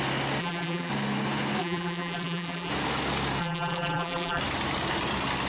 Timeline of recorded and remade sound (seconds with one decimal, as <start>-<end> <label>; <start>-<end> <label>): 0.0-0.4 recorded; 0.4-0.9 remade; 0.9-1.6 recorded; 1.6-2.7 remade; 2.7-3.4 recorded; 3.4-4.4 remade; 4.4-5.5 recorded